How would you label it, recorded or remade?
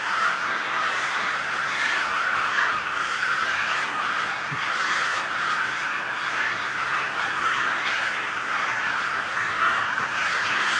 remade